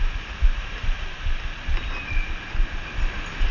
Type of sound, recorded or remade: recorded